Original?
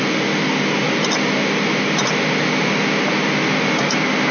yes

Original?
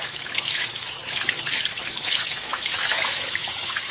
no